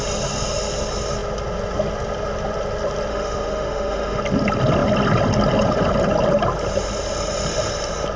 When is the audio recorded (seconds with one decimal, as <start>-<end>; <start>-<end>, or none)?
0.0-3.1; 4.2-8.2